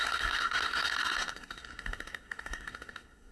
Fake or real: fake